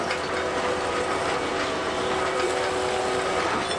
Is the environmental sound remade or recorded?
recorded